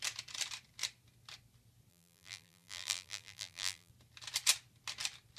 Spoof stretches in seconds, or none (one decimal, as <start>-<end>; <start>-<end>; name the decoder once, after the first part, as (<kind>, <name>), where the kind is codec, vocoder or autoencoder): 1.9-3.9 (vocoder, BigVGAN v2)